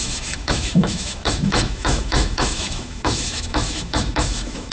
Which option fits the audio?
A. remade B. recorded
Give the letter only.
A